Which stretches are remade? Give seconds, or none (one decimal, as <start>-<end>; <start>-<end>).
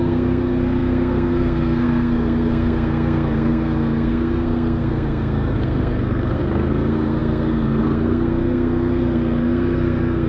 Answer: 0.0-10.3